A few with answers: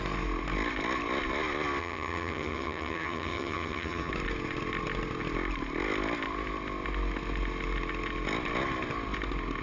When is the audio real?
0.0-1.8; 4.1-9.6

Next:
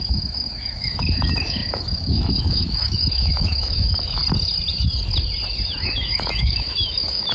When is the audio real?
4.2-5.8

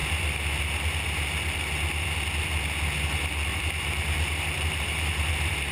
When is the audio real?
0.0-3.5

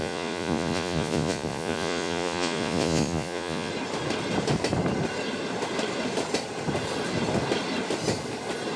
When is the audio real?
3.7-8.8

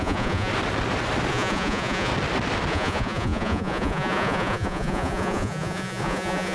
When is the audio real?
0.5-1.3; 2.1-2.7

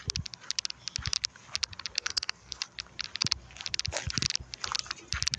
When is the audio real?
0.0-2.0; 2.6-5.4